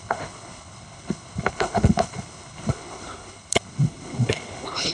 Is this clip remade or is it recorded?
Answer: remade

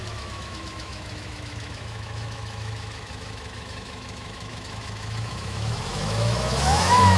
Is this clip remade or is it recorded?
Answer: remade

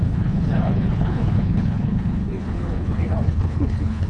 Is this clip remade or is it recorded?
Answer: remade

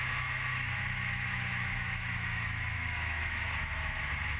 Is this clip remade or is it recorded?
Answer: remade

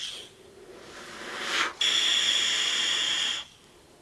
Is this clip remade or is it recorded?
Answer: recorded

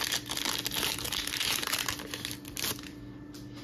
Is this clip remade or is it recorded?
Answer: recorded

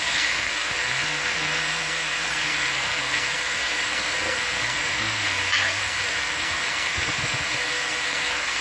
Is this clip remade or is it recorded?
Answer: remade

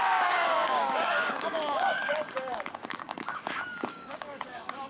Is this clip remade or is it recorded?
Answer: remade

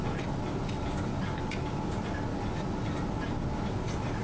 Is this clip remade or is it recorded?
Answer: recorded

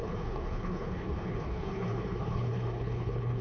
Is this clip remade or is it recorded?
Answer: remade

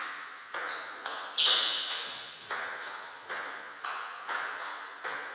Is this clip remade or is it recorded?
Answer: remade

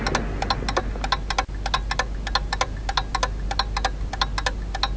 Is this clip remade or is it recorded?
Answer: recorded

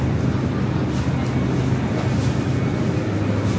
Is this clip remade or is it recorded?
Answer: recorded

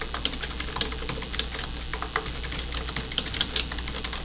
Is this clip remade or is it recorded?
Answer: recorded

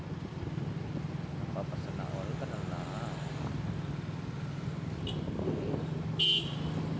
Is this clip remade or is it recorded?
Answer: recorded